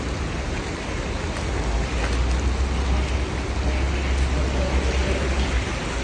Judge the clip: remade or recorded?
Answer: recorded